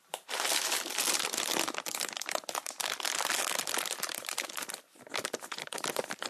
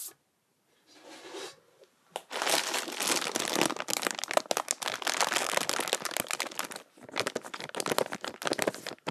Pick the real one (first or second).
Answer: second